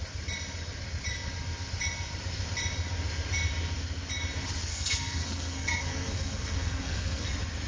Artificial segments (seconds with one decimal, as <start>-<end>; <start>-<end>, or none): 4.7-7.3